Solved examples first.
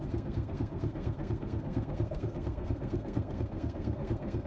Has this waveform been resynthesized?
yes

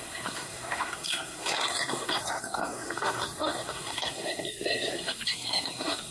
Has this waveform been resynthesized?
yes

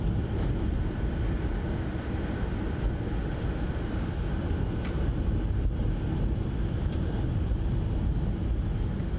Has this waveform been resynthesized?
no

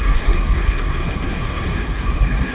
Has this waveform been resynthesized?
yes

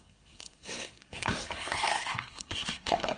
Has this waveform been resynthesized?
yes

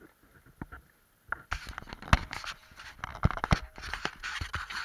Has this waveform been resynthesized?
no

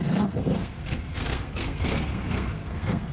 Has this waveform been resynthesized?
yes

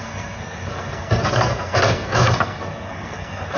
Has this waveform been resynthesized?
yes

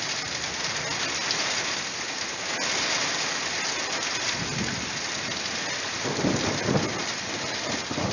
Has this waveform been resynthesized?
no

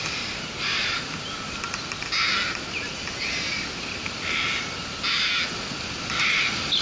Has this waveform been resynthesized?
no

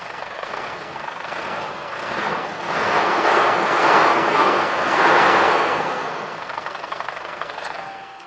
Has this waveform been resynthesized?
yes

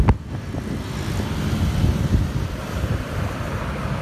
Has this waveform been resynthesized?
no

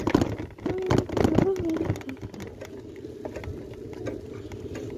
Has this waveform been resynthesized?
no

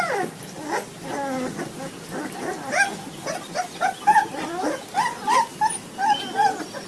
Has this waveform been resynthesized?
no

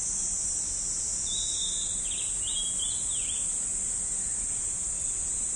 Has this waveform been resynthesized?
no